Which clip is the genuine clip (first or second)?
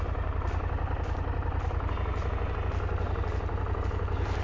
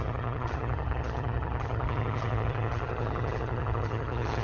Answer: first